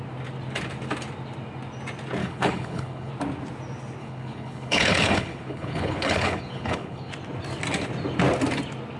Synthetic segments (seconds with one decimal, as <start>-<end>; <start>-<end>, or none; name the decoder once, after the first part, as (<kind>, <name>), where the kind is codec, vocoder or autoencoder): 2.2-3.1 (codec, HILCodec); 4.0-7.1